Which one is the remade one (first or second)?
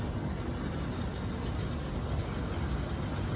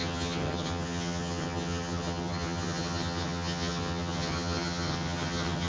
second